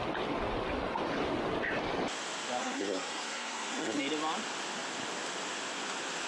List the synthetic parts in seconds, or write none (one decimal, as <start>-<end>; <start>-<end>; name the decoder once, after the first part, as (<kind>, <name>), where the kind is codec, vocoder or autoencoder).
2.6-4.0 (codec, SNAC)